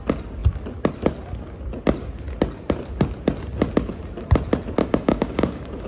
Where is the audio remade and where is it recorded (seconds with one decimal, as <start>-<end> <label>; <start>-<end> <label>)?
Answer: 0.0-4.8 recorded; 4.8-5.9 remade